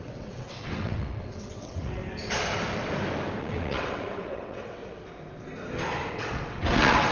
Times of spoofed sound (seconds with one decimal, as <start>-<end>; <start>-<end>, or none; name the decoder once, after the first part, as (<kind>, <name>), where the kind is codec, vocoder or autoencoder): 0.0-2.0 (vocoder, WaveNeXt); 3.4-4.8; 6.1-7.1